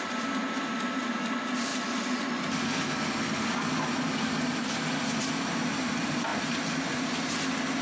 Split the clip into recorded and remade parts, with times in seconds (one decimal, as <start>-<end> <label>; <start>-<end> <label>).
0.0-1.7 remade; 1.7-5.2 recorded; 5.2-7.8 remade